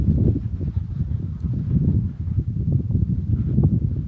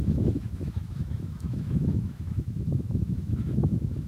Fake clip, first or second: second